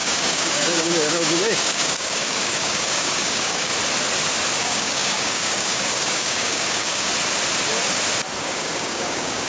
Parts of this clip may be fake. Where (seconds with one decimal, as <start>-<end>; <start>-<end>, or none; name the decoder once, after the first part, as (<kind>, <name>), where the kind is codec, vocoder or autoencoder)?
0.0-3.7 (codec, DAC); 4.6-7.1; 8.4-9.5

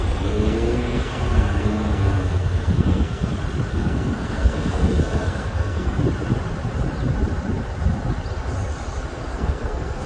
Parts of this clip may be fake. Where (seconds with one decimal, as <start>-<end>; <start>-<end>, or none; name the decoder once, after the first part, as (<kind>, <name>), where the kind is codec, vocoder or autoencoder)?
0.0-3.3 (codec, SNAC); 3.7-6.0; 9.3-10.1

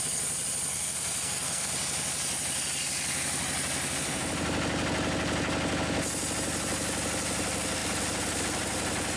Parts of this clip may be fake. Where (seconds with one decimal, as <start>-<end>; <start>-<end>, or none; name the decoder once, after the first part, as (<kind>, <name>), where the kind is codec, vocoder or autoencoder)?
0.7-1.7 (codec, SNAC)

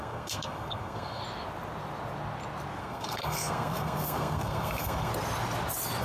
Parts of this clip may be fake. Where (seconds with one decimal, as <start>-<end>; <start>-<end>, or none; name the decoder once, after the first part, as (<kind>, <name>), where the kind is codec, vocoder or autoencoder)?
0.0-1.2 (codec, SNAC); 2.8-5.1

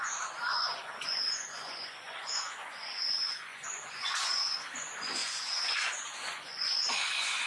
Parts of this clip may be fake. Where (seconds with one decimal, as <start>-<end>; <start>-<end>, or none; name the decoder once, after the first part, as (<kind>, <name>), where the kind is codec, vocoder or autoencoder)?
0.0-7.5 (vocoder, Vocos)

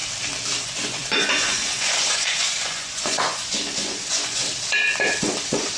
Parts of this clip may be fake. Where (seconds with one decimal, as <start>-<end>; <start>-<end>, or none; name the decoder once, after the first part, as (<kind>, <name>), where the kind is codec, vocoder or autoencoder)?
0.6-4.4 (vocoder, Vocos); 5.2-5.8

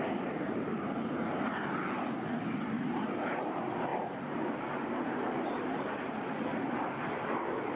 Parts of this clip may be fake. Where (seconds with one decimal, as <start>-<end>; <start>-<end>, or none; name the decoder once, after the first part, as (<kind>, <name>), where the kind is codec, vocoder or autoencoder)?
0.0-1.5 (vocoder, BigVGAN v2); 2.3-7.8